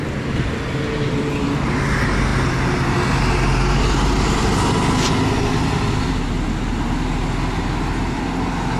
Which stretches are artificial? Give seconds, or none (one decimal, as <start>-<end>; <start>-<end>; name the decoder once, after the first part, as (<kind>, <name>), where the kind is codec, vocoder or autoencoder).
none